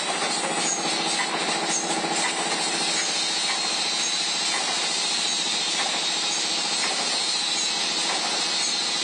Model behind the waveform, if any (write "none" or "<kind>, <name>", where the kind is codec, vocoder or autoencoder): none